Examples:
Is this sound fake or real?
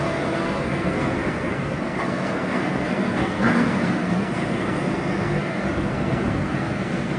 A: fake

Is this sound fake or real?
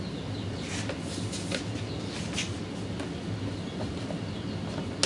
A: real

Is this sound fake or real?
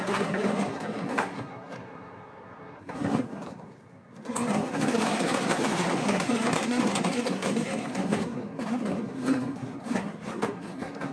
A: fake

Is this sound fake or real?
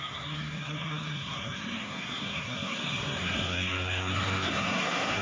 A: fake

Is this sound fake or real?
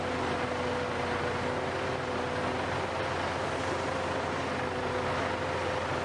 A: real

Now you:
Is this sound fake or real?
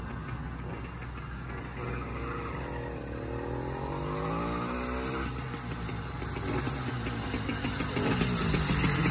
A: real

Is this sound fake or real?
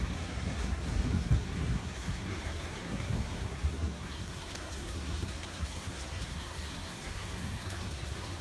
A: fake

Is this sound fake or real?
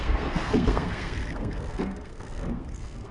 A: fake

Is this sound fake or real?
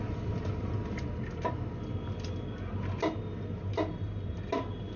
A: real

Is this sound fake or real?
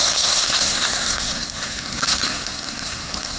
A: fake